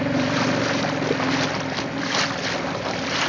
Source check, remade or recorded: recorded